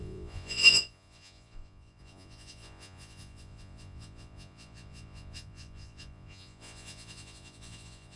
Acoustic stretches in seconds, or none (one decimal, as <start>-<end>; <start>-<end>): none

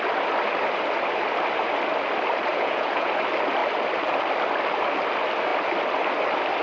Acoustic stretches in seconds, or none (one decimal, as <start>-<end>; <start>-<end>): 0.0-2.5; 3.1-6.6

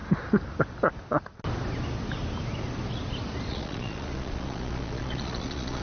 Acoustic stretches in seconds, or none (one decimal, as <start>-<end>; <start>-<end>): 0.0-3.5

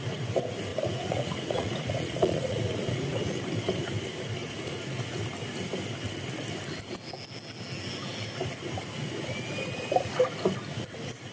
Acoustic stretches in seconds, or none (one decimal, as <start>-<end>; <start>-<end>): 0.0-0.7; 3.4-4.4; 5.2-11.3

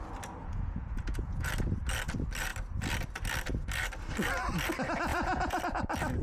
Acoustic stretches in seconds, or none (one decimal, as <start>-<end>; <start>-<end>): 0.0-0.4; 1.5-5.1; 5.6-6.2